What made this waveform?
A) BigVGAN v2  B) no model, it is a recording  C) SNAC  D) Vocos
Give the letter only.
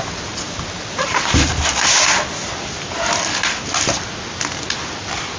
B